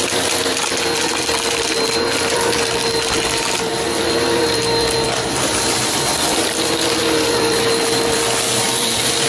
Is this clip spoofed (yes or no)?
yes